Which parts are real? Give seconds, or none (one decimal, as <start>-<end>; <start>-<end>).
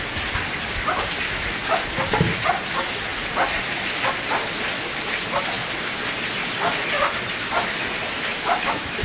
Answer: 0.0-8.3